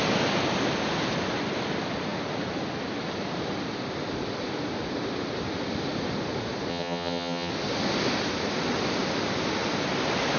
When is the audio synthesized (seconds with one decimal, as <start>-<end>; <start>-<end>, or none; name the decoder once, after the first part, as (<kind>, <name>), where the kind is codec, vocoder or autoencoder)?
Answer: 6.7-7.5 (vocoder, HiFi-GAN)